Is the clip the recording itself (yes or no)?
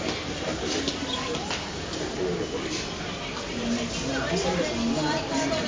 yes